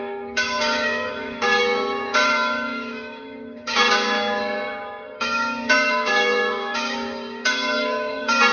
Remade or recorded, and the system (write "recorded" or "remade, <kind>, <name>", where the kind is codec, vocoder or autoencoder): remade, codec, DAC